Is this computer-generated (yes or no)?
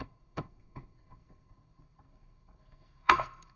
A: yes